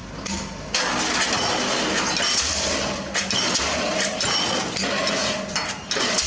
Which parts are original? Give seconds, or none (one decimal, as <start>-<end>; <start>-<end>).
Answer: 0.0-6.3